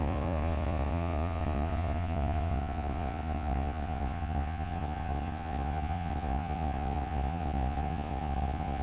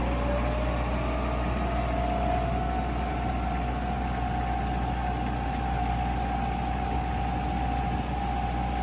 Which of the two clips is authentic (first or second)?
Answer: second